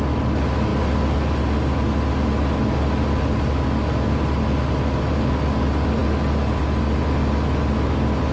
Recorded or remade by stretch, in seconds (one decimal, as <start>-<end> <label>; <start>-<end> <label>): 0.0-8.3 recorded